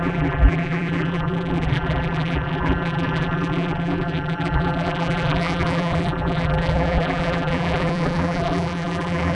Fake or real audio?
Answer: fake